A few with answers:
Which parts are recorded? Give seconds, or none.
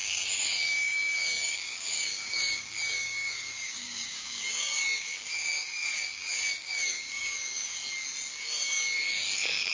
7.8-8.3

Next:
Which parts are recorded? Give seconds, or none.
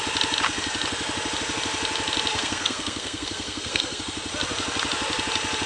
0.0-2.3; 4.0-5.7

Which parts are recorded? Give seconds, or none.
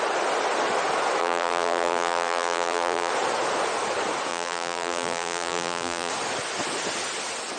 0.0-1.2; 3.1-4.3; 6.1-7.6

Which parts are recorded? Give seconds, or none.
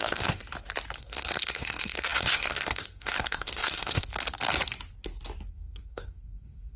0.4-1.0; 4.1-5.5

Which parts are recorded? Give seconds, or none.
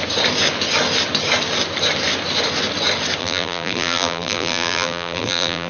0.0-3.2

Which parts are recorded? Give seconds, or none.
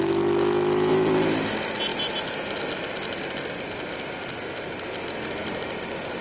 0.0-0.9; 1.5-5.4